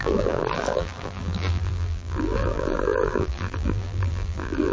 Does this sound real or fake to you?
fake